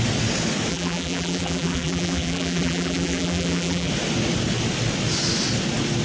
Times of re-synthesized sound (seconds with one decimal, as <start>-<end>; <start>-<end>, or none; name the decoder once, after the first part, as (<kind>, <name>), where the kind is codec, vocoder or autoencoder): 0.7-3.9 (vocoder, BigVGAN v2)